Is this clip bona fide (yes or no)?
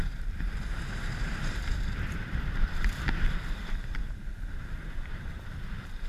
no